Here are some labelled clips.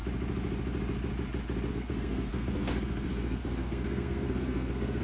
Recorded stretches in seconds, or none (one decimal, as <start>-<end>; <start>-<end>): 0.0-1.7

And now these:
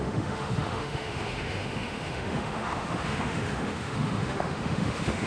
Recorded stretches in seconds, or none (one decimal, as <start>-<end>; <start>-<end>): none

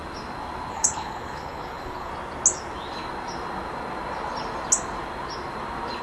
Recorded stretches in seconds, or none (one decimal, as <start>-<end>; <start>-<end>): 0.0-0.7; 2.1-6.0

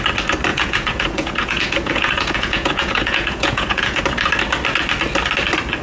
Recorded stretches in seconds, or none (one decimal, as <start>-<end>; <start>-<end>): 0.0-0.5; 4.0-5.8